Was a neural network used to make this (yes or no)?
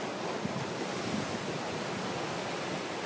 no